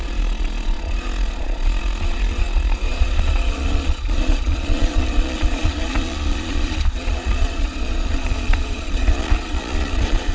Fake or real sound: fake